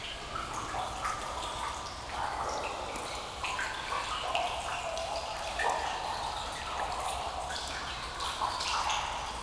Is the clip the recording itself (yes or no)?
yes